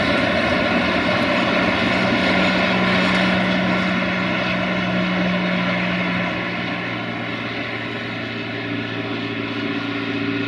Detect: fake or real real